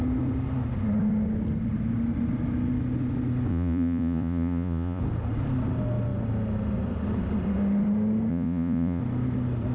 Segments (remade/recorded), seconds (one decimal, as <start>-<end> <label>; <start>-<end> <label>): 0.0-3.5 recorded; 3.5-5.0 remade; 5.0-8.3 recorded; 8.3-9.0 remade; 9.0-9.7 recorded